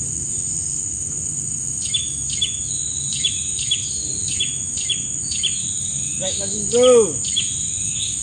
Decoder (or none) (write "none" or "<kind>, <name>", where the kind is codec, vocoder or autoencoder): autoencoder, DAC-VAE